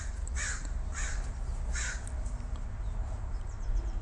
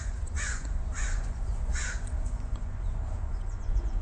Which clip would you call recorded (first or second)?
first